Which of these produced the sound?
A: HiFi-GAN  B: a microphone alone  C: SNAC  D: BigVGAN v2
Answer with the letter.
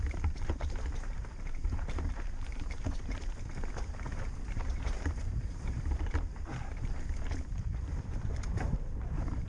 D